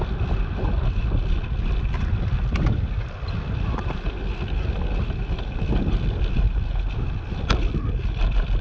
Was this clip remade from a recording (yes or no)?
no